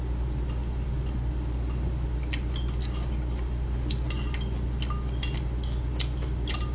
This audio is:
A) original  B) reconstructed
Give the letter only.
A